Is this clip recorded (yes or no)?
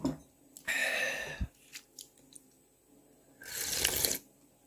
yes